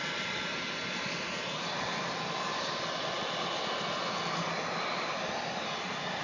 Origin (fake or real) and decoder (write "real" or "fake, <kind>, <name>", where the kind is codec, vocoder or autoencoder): real